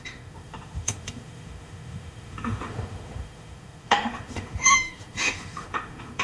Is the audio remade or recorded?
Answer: remade